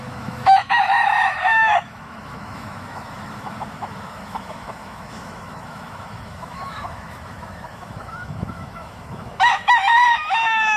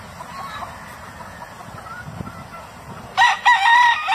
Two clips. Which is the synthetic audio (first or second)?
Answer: first